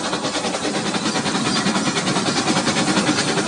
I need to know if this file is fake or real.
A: real